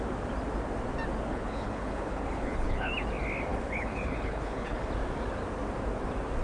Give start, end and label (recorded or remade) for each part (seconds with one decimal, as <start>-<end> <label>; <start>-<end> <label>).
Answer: 0.0-1.3 recorded; 1.3-2.9 remade; 2.9-3.5 recorded; 3.5-4.9 remade; 4.9-6.4 recorded